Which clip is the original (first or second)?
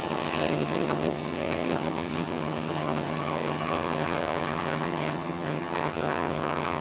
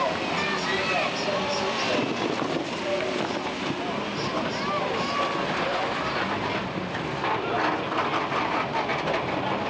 second